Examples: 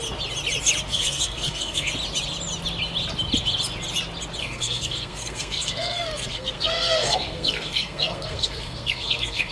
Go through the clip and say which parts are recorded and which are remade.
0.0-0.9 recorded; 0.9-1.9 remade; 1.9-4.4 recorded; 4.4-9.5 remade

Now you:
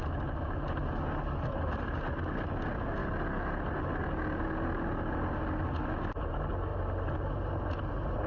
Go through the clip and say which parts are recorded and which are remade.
0.0-8.3 recorded

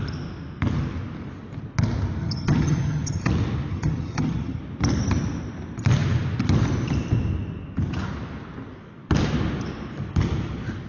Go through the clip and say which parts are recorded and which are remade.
0.0-2.2 recorded; 2.2-3.3 remade; 3.3-3.7 recorded; 3.7-4.6 remade; 4.6-10.9 recorded